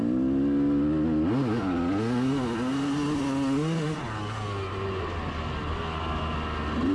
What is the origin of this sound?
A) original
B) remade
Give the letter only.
A